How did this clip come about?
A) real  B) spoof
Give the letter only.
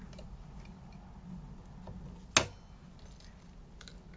A